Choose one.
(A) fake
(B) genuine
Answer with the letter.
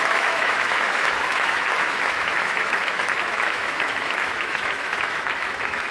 A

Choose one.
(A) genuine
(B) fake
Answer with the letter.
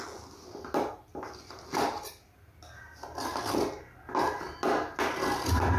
A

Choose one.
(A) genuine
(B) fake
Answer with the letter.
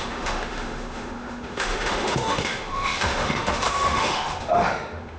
B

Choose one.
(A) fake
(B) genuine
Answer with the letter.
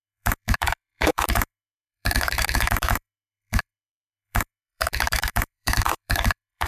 A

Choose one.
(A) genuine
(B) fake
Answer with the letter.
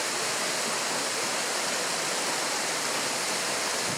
A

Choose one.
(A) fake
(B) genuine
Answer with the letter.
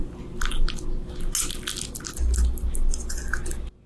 B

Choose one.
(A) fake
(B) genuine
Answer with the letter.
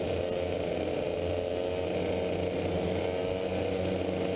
B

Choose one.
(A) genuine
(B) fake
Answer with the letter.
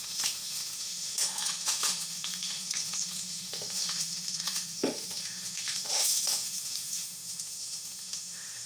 B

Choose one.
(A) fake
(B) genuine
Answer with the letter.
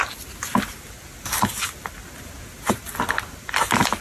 B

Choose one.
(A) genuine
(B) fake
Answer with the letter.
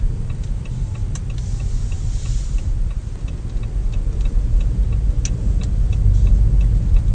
A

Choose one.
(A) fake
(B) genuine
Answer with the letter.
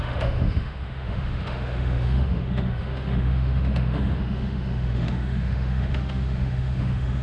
A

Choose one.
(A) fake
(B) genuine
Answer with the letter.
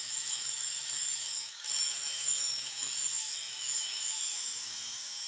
A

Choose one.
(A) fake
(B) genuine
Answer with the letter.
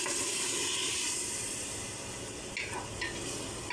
B